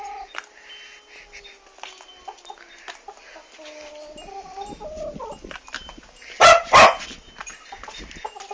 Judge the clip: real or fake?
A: real